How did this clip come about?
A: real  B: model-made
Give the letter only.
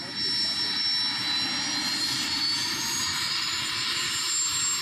A